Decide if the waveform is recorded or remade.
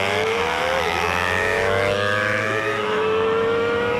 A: remade